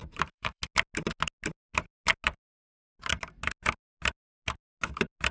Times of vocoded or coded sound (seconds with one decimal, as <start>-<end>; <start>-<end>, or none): 0.0-0.6